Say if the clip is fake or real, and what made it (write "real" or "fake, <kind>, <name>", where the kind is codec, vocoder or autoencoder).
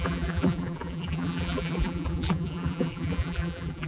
fake, vocoder, BigVGAN v2